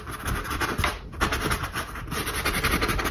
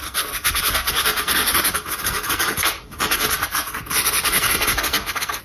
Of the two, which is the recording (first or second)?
first